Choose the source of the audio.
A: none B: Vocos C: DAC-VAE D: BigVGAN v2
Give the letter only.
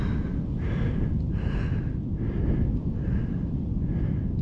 A